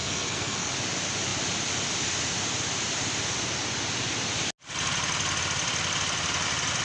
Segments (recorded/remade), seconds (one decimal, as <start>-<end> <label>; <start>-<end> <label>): 0.0-0.7 remade; 0.7-6.8 recorded